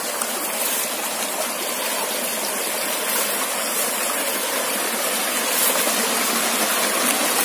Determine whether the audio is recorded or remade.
recorded